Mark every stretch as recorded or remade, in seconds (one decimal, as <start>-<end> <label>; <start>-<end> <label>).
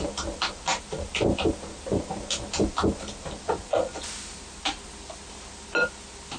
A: 0.0-3.6 recorded; 3.6-4.1 remade; 4.1-6.4 recorded